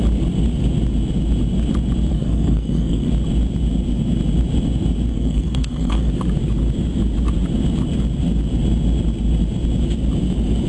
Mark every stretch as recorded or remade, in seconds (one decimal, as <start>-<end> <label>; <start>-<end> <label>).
0.0-2.1 recorded; 2.1-3.1 remade; 3.1-5.1 recorded; 5.1-6.1 remade; 6.1-10.7 recorded